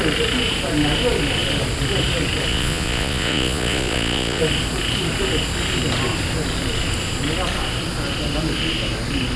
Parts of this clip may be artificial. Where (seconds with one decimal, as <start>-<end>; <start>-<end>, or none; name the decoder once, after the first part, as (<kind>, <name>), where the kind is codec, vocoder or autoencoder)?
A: 2.5-4.4 (vocoder, Vocos)